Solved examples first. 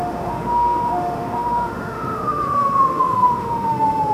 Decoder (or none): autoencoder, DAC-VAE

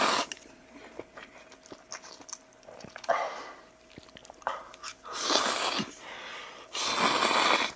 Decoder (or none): none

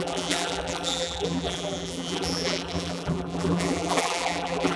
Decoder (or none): vocoder, BigVGAN v2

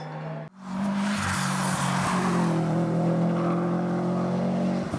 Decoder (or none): none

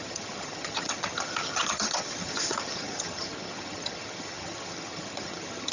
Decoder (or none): vocoder, HiFi-GAN